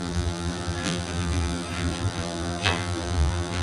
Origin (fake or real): fake